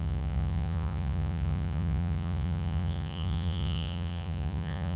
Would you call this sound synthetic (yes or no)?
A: yes